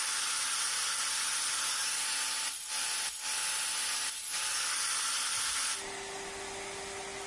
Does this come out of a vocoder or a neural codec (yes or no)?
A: no